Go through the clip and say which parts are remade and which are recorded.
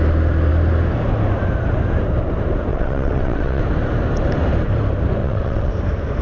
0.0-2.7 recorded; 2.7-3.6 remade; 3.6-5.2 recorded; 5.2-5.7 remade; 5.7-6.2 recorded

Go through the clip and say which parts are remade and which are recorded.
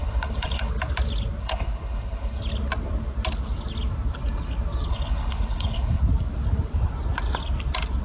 0.0-0.7 remade; 0.7-1.4 recorded; 1.4-2.4 remade; 2.4-4.9 recorded; 4.9-6.0 remade; 6.0-8.0 recorded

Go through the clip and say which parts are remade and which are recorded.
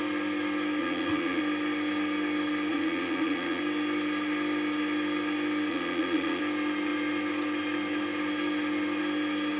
0.0-0.8 recorded; 0.8-1.4 remade; 1.4-2.7 recorded; 2.7-3.6 remade; 3.6-5.7 recorded; 5.7-6.4 remade; 6.4-9.6 recorded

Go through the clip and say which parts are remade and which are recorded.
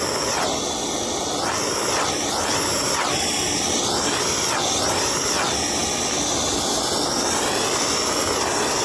0.0-8.8 recorded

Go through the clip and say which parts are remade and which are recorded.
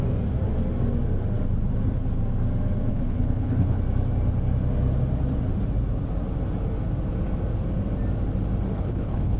0.0-2.9 recorded; 2.9-3.8 remade; 3.8-8.7 recorded; 8.7-9.4 remade